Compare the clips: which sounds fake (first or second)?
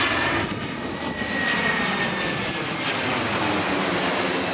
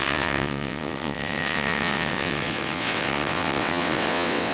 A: second